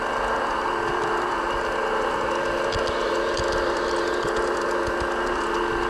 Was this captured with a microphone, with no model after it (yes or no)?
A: yes